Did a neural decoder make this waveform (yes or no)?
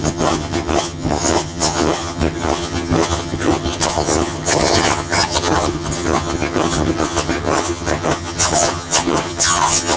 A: yes